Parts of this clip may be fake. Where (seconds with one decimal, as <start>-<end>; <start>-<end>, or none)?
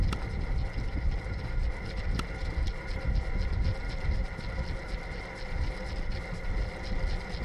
none